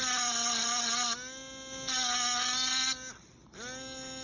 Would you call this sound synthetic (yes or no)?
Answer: no